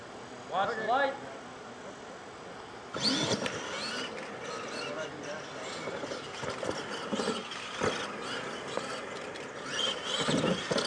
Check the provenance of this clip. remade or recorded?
recorded